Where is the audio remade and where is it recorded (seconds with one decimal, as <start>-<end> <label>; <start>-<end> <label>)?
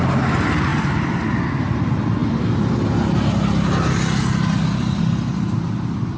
0.0-6.2 recorded